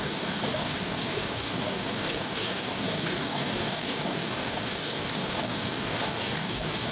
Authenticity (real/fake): fake